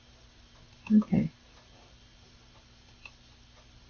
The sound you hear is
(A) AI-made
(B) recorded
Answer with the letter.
B